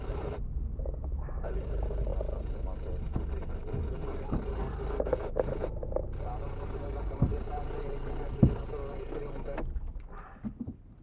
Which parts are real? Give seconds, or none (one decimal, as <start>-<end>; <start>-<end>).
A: 0.0-11.0